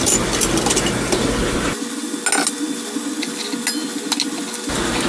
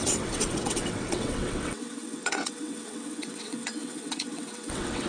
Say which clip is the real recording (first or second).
first